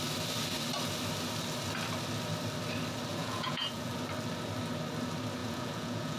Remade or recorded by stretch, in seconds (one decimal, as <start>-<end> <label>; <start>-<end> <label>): 0.0-3.1 recorded; 3.1-3.9 remade; 3.9-5.4 recorded; 5.4-6.2 remade